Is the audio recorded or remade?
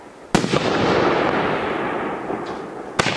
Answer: recorded